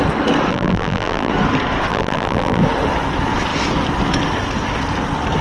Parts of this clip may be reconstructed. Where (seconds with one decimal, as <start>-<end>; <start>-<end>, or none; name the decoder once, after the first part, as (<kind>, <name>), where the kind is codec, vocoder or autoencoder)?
0.5-1.3 (vocoder, BigVGAN v2); 1.9-2.6